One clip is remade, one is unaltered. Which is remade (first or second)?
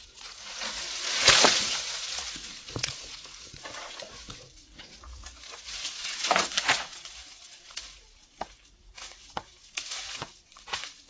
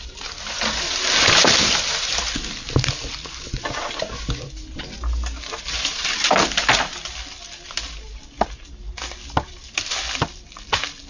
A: first